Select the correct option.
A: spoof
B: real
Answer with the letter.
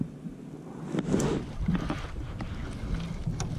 B